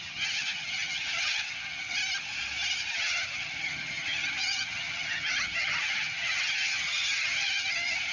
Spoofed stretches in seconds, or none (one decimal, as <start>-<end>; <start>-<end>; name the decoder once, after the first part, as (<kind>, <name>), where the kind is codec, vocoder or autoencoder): 0.0-2.0 (vocoder, HiFi-GAN); 2.9-8.1